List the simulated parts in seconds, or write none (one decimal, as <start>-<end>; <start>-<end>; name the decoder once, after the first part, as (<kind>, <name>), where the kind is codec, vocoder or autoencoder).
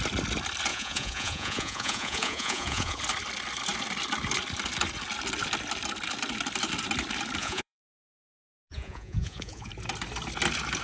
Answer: 0.7-3.0 (vocoder, Vocos); 7.4-9.7